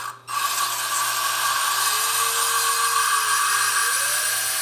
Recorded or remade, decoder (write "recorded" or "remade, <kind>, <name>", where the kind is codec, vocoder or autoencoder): recorded